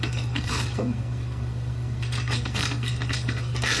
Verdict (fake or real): fake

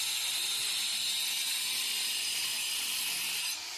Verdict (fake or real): real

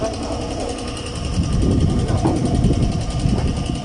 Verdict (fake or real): real